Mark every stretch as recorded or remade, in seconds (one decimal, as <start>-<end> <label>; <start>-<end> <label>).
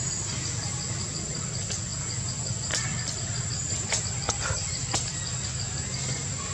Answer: 0.0-6.5 recorded